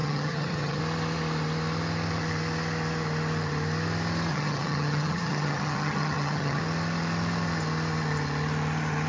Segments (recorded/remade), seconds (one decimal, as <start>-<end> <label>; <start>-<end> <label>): 0.0-0.8 remade; 0.8-4.3 recorded; 4.3-6.6 remade; 6.6-9.1 recorded